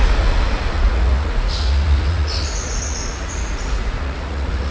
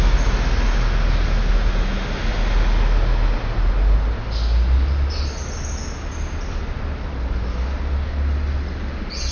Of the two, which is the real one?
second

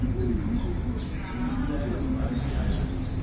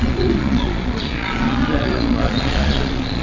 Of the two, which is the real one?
first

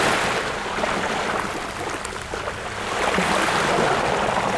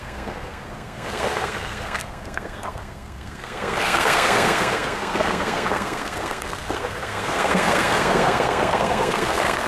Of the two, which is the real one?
first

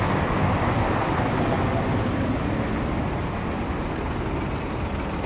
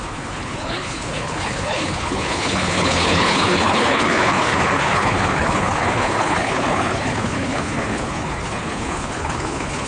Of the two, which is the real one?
first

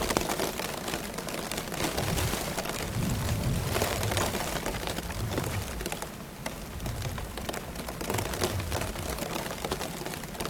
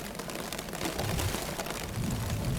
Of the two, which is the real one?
second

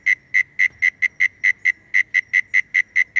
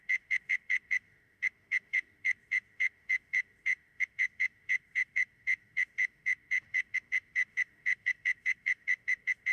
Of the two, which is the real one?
first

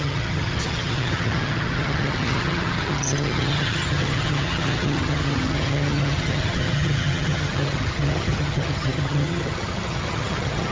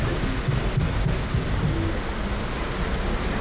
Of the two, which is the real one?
second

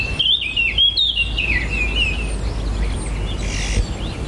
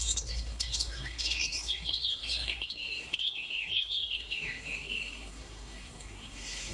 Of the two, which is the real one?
first